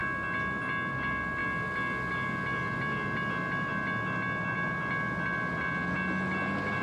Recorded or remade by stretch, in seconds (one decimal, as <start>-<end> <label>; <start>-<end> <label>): 0.0-6.8 recorded